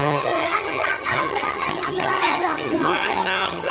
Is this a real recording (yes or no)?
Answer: no